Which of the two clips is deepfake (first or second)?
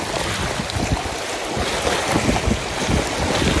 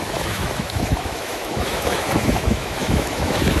second